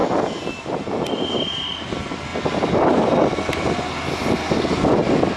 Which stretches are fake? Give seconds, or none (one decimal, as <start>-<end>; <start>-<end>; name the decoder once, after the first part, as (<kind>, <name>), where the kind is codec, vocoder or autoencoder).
none

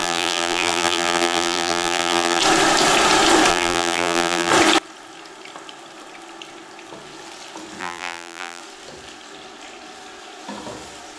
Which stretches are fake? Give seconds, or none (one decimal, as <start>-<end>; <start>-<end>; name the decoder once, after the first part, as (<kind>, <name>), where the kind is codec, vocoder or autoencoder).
0.0-2.4 (vocoder, BigVGAN v2); 3.5-4.5; 7.8-8.6

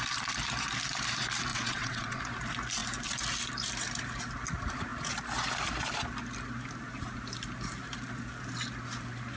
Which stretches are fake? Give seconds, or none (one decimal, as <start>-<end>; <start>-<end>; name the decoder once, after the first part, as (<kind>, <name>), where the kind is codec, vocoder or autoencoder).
1.5-2.2 (vocoder, WaveNeXt)

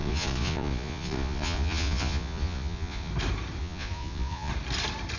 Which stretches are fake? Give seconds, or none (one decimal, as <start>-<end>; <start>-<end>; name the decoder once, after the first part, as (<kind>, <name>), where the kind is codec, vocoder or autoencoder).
0.0-3.1 (vocoder, Vocos); 3.6-4.5

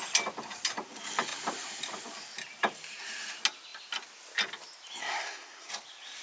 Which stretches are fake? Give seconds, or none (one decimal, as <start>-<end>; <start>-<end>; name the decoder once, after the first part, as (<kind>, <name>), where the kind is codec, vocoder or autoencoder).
5.0-5.7 (codec, SNAC)

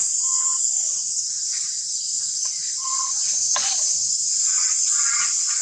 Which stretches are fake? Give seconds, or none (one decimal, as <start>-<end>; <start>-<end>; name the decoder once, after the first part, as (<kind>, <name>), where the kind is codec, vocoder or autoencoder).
0.0-5.6 (vocoder, Vocos)